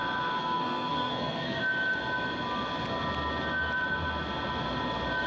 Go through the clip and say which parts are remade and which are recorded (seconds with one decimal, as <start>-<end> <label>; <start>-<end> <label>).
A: 0.0-0.4 recorded; 0.4-1.6 remade; 1.6-5.3 recorded